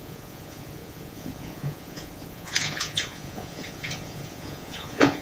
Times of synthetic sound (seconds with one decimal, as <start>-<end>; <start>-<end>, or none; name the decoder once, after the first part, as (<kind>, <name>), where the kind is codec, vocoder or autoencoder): 0.0-5.2 (vocoder, Vocos)